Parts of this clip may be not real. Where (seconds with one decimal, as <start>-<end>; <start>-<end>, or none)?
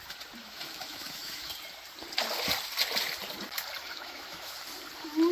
0.4-1.5; 3.8-4.5